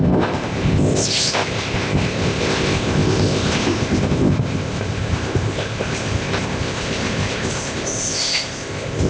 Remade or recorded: remade